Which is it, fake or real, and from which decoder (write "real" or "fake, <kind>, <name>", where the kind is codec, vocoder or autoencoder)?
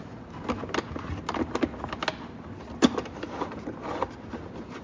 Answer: real